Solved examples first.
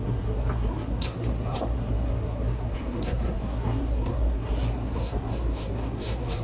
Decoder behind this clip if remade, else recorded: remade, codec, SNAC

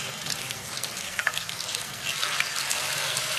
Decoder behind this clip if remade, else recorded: remade, codec, SNAC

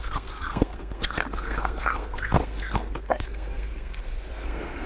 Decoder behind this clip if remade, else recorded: remade, codec, SNAC